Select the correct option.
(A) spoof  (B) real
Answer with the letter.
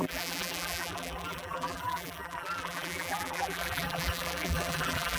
A